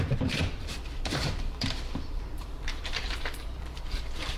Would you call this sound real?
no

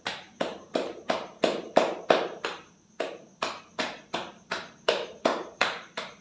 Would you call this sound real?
no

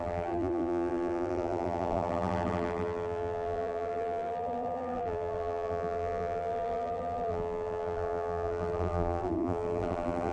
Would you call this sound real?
no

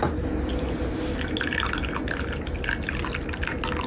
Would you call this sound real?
yes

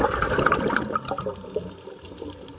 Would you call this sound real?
yes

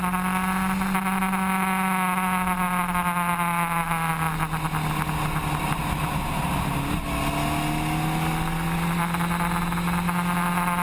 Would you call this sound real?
yes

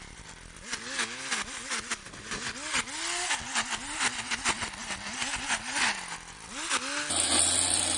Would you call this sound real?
yes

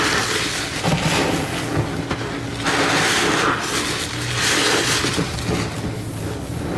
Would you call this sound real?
yes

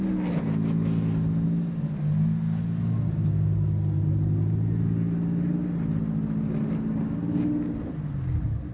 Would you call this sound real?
yes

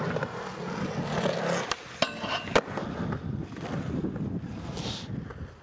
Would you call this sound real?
yes